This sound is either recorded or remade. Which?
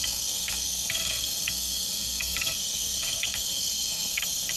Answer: remade